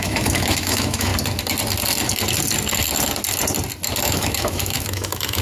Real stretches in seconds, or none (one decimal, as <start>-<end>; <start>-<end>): 1.1-4.0